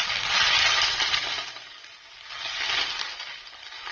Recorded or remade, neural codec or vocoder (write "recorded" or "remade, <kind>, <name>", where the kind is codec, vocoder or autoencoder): recorded